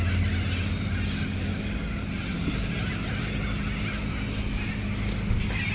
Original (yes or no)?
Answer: yes